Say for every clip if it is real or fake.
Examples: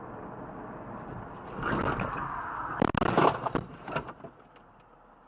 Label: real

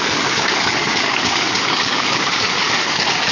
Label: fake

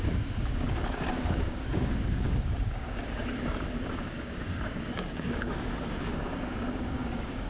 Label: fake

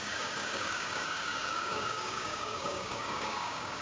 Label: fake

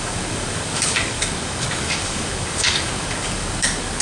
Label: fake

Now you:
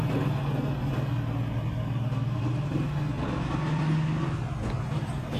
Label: real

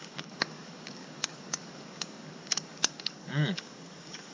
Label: fake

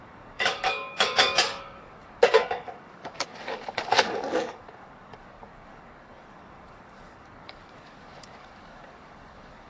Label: fake